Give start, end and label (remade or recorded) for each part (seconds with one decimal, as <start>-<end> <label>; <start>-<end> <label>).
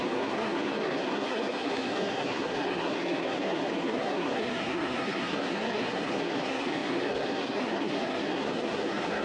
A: 0.0-9.2 remade